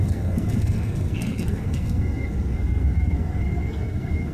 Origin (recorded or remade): remade